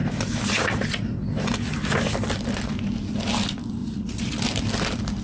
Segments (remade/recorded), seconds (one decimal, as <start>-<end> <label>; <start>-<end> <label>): 0.0-3.8 recorded; 3.8-4.4 remade; 4.4-5.2 recorded